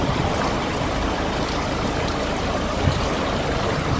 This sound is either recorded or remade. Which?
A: recorded